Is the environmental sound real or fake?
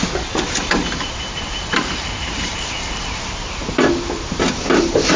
fake